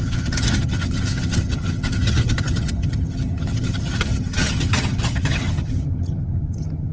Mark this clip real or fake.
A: fake